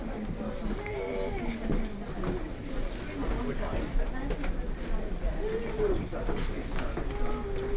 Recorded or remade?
recorded